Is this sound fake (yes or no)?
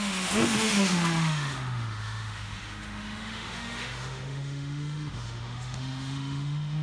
yes